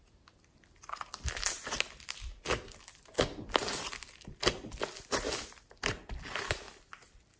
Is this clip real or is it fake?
real